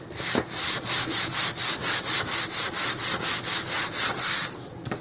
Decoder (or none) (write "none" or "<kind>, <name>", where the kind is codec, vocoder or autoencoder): none